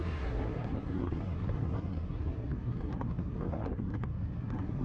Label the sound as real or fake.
fake